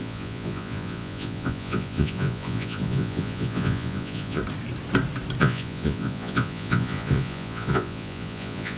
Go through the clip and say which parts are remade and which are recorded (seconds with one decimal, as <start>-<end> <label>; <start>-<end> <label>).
0.0-4.4 remade; 4.4-5.4 recorded; 5.4-8.8 remade